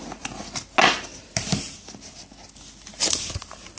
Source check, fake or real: real